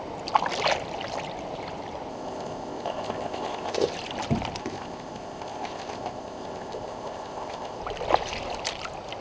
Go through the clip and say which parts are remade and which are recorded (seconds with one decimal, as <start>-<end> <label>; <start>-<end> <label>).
0.0-2.1 recorded; 2.1-3.9 remade; 3.9-4.6 recorded; 4.6-7.8 remade; 7.8-9.2 recorded